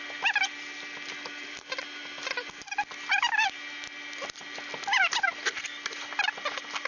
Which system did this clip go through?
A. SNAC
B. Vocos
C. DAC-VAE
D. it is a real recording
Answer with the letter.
D